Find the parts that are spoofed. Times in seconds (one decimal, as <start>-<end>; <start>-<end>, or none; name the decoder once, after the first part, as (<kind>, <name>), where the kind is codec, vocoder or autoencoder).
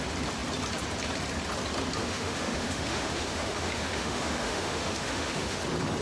2.0-5.6 (autoencoder, DAC-VAE)